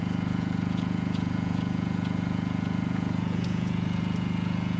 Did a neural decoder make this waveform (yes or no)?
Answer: yes